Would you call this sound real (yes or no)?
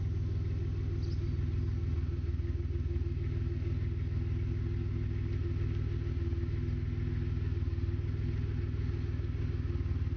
yes